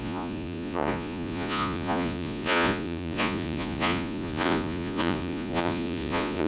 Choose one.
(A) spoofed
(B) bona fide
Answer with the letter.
A